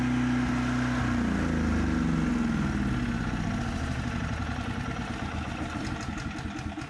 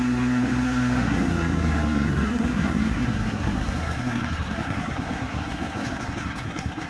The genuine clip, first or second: first